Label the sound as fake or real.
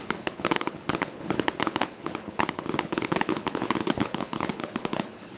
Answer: fake